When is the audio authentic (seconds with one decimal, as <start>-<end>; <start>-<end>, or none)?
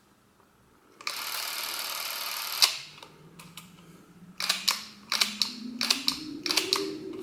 0.0-7.2